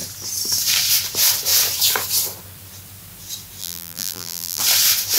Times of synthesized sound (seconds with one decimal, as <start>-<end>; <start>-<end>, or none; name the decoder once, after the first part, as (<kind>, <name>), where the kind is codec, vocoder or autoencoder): 3.6-4.6 (vocoder, BigVGAN v2)

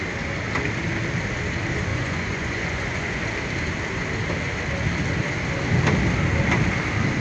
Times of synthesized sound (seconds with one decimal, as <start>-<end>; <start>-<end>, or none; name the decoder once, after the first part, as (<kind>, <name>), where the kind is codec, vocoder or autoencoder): 1.9-3.2 (vocoder, Vocos)

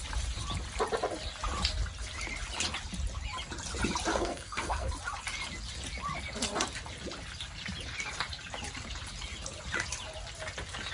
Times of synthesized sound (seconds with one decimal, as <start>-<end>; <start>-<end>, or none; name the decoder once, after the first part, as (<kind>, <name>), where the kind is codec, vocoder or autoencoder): 4.1-4.9 (codec, SNAC)

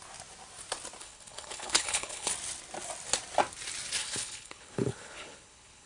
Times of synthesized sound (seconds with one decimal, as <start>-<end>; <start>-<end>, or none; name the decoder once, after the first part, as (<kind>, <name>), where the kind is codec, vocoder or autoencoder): 1.0-2.3 (codec, HILCodec); 4.0-5.9